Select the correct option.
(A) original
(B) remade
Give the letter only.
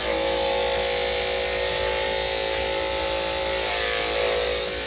A